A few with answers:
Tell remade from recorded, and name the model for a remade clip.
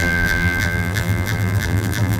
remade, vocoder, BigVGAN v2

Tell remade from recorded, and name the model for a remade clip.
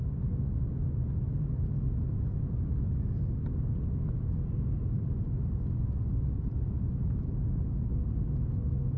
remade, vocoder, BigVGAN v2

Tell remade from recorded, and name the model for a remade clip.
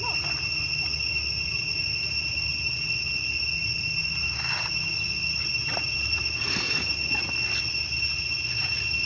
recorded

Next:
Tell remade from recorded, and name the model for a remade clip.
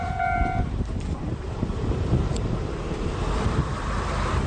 remade, vocoder, BigVGAN v2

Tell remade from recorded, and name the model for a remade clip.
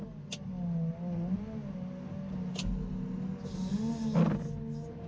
recorded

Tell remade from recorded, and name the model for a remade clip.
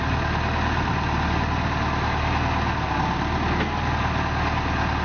recorded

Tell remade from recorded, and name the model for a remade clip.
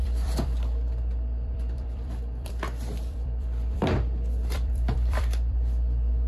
remade, vocoder, BigVGAN v2